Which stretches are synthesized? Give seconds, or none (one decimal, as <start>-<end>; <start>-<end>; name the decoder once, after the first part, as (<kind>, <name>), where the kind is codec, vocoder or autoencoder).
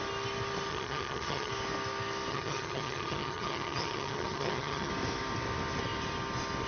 0.7-1.5 (vocoder, HiFi-GAN); 2.3-4.9